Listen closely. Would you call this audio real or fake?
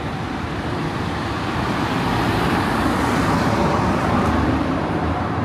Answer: fake